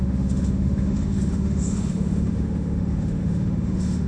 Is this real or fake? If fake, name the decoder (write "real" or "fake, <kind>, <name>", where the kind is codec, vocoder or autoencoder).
fake, autoencoder, DAC-VAE